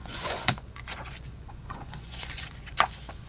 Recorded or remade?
remade